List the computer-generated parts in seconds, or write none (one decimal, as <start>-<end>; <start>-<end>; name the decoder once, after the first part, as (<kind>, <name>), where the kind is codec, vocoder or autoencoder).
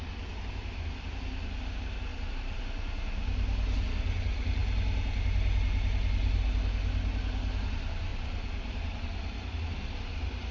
2.1-2.6 (vocoder, BigVGAN v2); 8.1-9.3